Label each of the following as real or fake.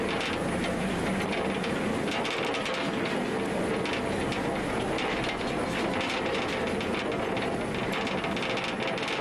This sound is real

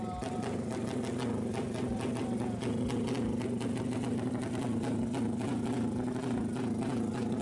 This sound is real